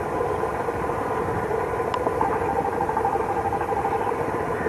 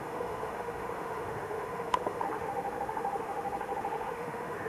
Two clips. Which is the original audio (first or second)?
first